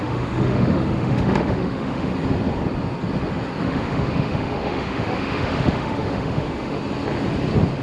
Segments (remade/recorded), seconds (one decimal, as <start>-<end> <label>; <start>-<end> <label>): 0.0-2.1 remade; 2.1-3.6 recorded; 3.6-6.8 remade; 6.8-7.8 recorded